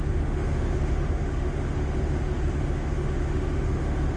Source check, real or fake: fake